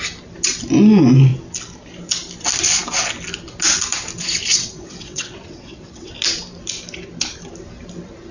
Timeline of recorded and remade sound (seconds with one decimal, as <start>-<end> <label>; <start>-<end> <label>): 0.0-4.5 recorded; 4.5-6.1 remade; 6.1-8.3 recorded